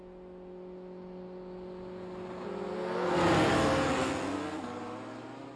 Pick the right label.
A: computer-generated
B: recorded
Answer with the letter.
B